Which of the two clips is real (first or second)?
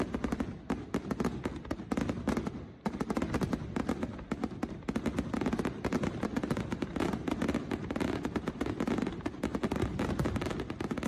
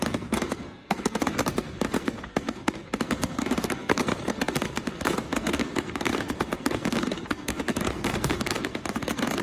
first